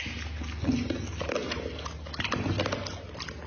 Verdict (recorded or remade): recorded